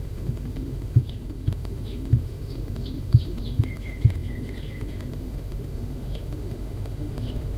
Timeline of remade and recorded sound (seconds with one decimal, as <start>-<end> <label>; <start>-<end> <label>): 0.0-7.6 remade